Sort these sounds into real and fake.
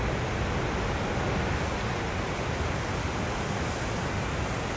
real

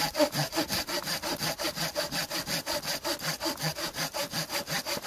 real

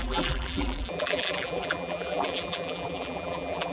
fake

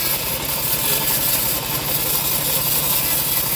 real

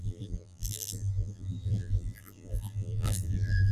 fake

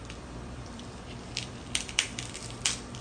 fake